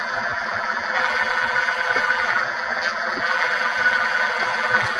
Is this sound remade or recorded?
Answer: remade